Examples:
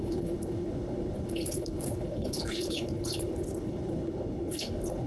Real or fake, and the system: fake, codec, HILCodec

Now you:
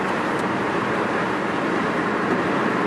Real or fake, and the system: fake, vocoder, BigVGAN v2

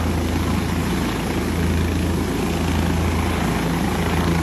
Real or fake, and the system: real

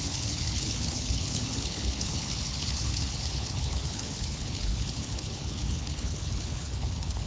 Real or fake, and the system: fake, codec, HILCodec